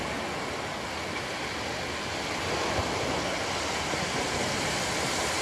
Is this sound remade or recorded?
recorded